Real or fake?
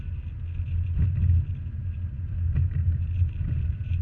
real